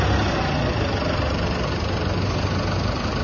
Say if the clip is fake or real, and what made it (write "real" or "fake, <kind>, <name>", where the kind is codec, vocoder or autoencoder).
real